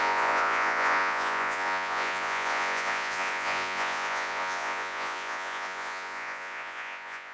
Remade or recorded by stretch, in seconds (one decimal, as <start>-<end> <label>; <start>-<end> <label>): 0.0-7.3 remade